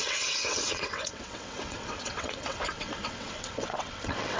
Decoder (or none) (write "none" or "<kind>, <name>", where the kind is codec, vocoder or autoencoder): vocoder, WaveNeXt